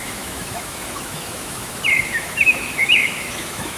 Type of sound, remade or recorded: remade